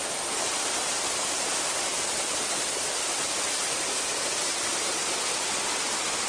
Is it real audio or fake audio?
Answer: real